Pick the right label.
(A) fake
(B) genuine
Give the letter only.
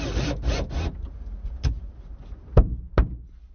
B